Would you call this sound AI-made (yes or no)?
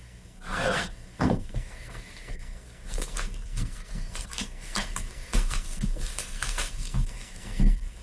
yes